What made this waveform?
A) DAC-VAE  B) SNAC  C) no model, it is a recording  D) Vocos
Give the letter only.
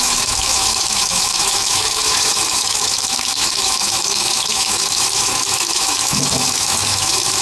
A